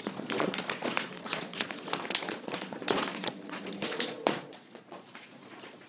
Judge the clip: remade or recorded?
remade